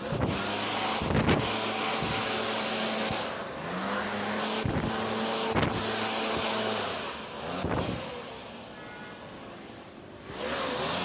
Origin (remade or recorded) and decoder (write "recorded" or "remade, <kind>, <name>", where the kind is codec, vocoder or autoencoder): recorded